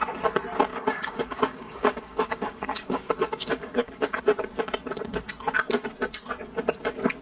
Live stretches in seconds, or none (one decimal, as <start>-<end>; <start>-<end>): 0.0-0.7; 4.2-7.2